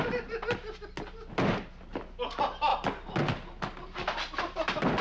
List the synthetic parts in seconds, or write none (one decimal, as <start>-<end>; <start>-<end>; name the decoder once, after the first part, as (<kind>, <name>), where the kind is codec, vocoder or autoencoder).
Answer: none